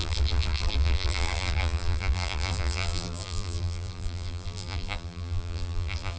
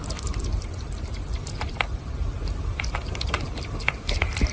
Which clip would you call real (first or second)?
second